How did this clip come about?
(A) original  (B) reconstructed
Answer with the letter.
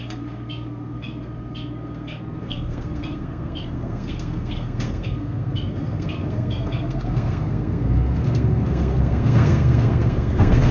B